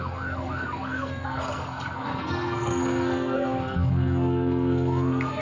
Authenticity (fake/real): fake